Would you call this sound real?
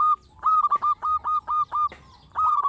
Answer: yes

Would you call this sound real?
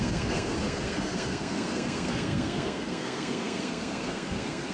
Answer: no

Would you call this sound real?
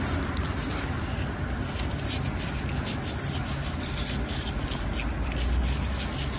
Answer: yes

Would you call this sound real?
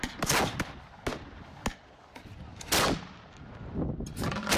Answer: yes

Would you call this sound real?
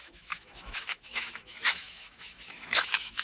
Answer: no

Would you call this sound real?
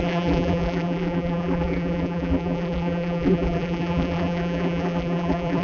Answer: no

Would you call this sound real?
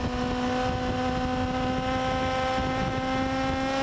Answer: yes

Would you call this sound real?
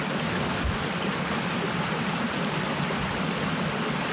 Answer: yes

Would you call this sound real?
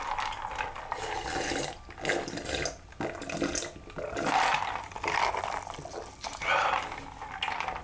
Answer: yes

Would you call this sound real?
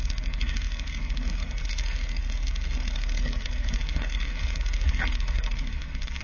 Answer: no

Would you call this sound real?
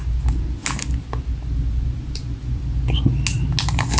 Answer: yes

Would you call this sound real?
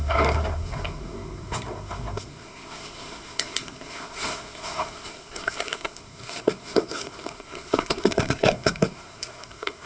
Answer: no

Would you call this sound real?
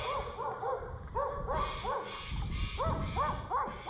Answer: yes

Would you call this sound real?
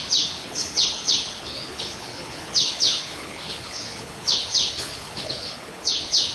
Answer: no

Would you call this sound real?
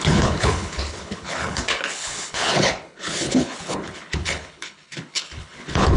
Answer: no